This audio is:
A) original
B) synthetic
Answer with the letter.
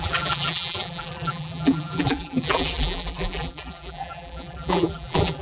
B